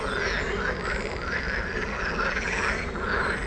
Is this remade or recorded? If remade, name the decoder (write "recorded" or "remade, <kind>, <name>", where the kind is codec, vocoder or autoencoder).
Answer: recorded